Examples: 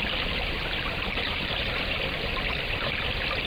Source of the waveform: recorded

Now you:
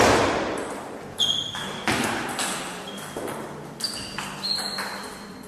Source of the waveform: recorded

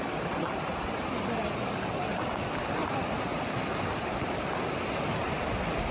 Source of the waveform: remade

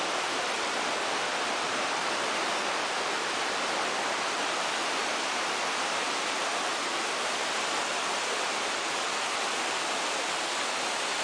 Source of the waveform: remade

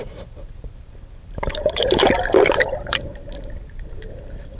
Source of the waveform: remade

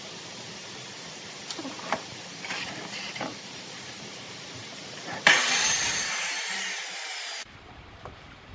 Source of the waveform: remade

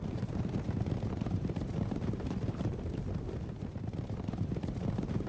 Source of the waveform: remade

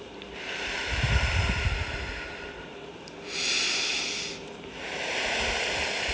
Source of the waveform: remade